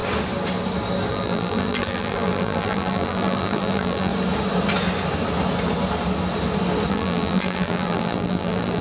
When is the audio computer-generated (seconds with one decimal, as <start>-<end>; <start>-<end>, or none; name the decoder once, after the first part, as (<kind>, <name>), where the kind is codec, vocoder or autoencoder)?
1.1-4.1 (vocoder, BigVGAN v2); 6.9-8.8